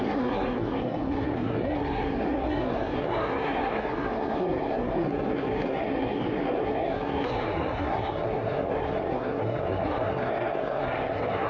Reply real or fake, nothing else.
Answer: fake